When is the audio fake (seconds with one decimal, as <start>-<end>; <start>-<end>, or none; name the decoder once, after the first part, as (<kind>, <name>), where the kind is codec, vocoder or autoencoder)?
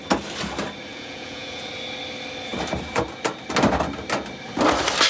0.9-1.7 (vocoder, Vocos)